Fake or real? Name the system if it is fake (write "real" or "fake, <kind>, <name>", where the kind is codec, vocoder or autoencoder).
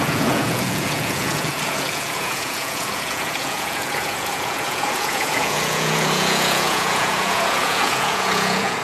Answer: fake, vocoder, Vocos